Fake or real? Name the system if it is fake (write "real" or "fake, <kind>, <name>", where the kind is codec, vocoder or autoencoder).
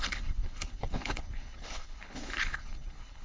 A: fake, codec, HILCodec